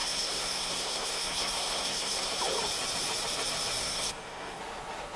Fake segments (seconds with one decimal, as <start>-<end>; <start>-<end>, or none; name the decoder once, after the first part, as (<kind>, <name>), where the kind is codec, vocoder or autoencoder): 0.0-2.3 (codec, SNAC); 3.8-4.6